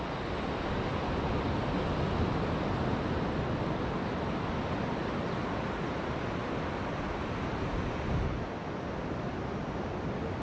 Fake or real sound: real